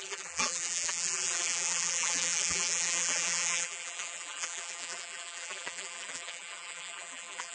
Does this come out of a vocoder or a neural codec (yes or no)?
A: yes